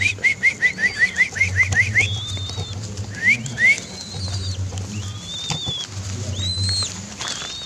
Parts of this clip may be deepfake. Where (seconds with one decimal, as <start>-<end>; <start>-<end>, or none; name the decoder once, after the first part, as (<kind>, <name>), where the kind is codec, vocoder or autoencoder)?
none